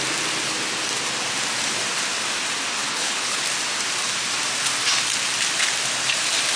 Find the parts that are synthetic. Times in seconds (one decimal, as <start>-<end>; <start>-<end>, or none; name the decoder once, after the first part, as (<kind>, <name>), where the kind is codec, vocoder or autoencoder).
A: 2.8-3.4 (codec, HILCodec)